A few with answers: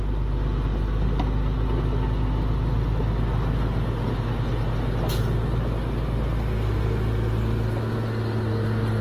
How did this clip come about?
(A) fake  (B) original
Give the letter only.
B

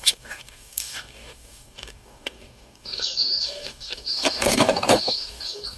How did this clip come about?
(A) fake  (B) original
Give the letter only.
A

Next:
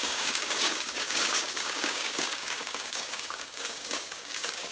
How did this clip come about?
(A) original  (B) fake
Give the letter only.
B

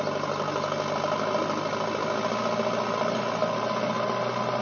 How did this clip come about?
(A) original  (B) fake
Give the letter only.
A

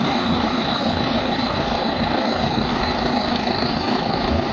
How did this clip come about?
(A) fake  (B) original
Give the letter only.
A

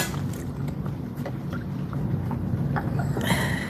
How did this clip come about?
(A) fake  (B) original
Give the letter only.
B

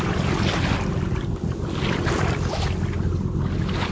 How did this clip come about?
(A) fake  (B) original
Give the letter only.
B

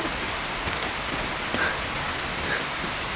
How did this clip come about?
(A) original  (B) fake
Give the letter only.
A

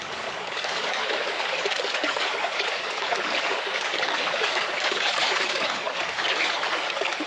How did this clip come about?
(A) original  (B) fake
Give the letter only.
B